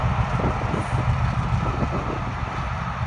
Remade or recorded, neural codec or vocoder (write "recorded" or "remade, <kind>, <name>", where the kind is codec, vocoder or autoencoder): recorded